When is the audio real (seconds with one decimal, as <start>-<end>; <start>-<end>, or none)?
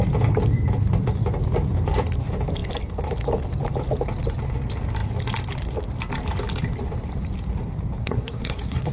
0.0-8.0